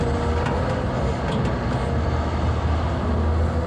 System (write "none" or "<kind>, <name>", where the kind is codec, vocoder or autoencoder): none